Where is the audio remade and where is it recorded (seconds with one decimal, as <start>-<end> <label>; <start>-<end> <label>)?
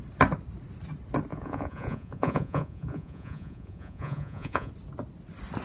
0.0-1.3 recorded; 1.3-4.7 remade; 4.7-5.6 recorded